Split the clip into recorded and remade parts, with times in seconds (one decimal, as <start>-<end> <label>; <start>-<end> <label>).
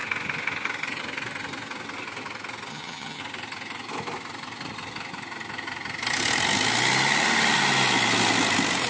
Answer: 0.0-2.7 recorded; 2.7-3.2 remade; 3.2-8.9 recorded